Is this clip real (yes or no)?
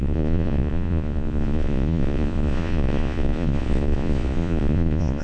no